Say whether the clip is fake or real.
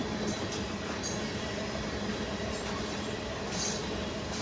real